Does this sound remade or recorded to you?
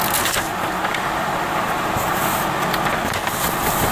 recorded